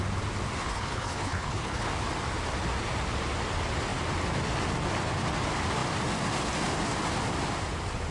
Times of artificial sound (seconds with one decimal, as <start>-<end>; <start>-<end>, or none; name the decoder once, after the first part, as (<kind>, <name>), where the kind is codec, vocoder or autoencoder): 0.6-1.9 (codec, HILCodec)